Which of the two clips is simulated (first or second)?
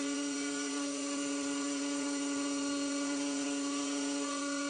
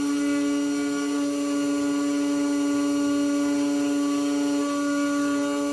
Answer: first